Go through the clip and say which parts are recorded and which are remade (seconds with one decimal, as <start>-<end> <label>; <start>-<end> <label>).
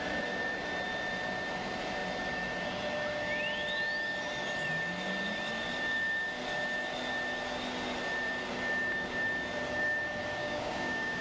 0.0-10.4 recorded; 10.4-11.2 remade